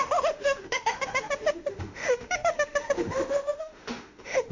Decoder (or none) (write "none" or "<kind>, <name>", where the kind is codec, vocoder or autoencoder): autoencoder, DAC-VAE